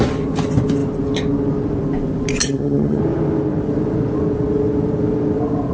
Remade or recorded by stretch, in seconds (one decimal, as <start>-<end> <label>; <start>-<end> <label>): 0.0-2.4 recorded; 2.4-3.0 remade; 3.0-5.7 recorded